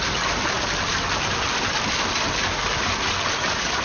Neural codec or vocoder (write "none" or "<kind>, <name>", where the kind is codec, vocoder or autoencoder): none